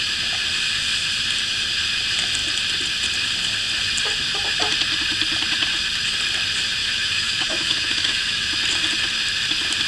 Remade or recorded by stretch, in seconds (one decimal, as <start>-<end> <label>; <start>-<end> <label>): 0.0-6.8 recorded; 6.8-8.5 remade; 8.5-9.9 recorded